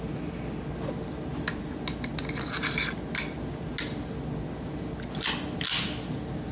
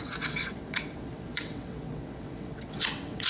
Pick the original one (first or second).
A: first